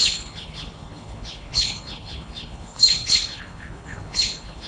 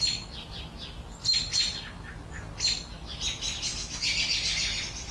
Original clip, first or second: second